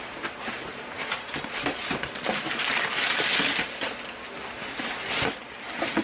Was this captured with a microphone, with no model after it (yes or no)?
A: yes